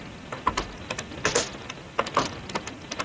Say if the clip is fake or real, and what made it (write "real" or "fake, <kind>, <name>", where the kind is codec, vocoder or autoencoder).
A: real